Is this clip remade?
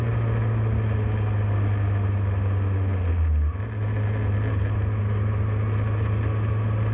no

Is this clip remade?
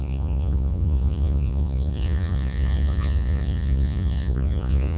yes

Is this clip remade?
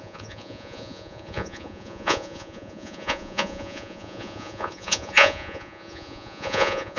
yes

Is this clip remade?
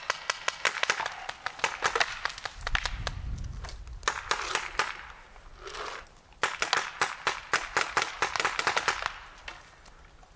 no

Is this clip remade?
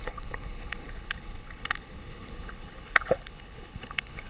yes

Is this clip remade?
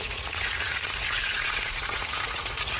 yes